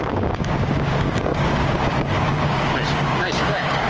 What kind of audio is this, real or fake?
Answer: fake